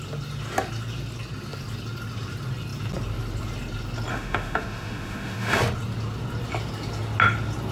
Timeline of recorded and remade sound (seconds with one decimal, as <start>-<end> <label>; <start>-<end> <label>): 0.0-4.1 recorded; 4.1-5.6 remade; 5.6-7.7 recorded